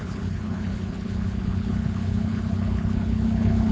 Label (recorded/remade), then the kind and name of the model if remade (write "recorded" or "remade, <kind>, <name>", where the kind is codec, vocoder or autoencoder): remade, codec, HILCodec